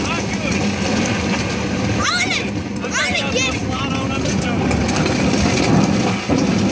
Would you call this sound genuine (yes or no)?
yes